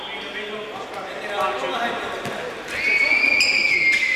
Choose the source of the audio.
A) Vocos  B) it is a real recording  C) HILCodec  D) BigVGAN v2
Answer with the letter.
B